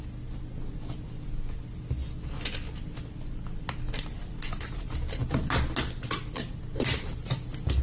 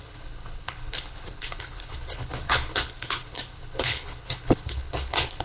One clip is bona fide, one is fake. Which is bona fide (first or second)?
first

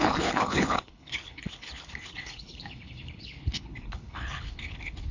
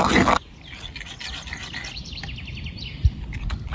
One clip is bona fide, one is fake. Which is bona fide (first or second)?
second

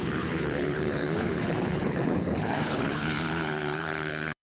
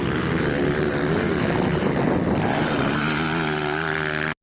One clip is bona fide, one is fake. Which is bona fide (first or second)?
second